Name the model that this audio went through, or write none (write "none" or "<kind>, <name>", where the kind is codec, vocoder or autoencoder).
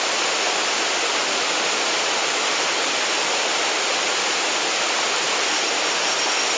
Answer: none